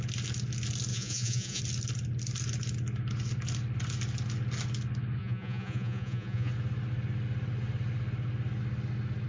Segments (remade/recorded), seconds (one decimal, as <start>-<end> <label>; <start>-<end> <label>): 0.0-0.9 recorded; 0.9-1.6 remade; 1.6-5.2 recorded; 5.2-6.5 remade; 6.5-9.3 recorded